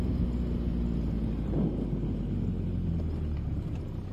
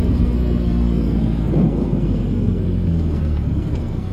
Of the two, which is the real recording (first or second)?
first